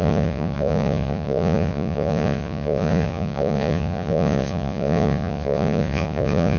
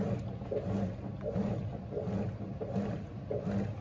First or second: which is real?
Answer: second